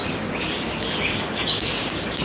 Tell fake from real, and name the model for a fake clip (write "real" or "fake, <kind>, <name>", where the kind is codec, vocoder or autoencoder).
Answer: fake, codec, DAC